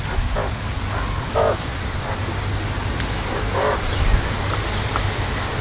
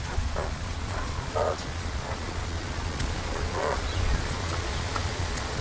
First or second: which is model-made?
second